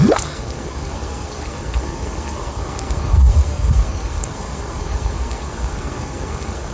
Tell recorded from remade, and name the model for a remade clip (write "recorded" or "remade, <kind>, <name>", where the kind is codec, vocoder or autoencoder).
remade, codec, SNAC